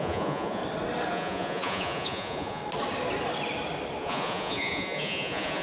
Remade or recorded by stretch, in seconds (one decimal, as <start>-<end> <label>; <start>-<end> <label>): 0.0-0.6 remade; 0.6-1.1 recorded; 1.1-2.6 remade; 2.6-4.0 recorded; 4.0-5.6 remade